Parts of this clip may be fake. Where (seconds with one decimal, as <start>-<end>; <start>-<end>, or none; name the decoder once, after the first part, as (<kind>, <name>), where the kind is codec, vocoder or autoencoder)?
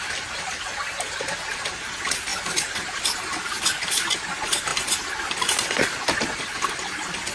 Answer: none